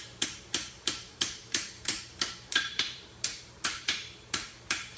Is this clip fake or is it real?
fake